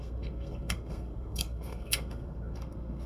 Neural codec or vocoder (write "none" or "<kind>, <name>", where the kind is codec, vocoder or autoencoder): codec, SNAC